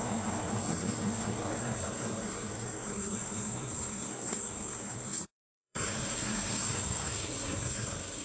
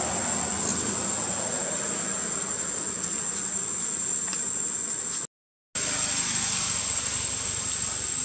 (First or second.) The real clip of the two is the second